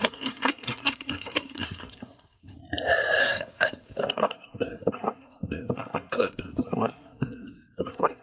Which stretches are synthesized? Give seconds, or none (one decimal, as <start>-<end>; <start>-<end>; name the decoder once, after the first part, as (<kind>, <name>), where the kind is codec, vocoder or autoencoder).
0.0-2.6 (codec, SNAC); 3.2-8.2